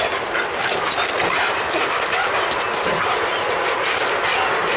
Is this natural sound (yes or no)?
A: yes